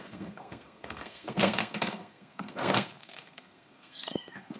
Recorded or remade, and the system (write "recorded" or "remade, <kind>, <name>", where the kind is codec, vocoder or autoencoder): remade, codec, SNAC